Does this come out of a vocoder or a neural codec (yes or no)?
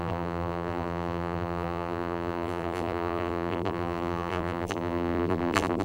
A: yes